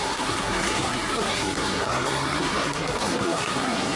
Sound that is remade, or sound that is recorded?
remade